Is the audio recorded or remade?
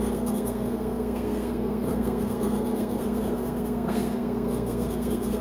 remade